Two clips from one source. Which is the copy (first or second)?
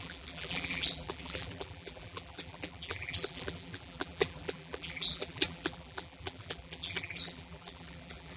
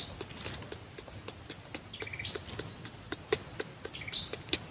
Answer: first